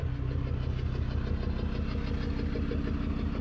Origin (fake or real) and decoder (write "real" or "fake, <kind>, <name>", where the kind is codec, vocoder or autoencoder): real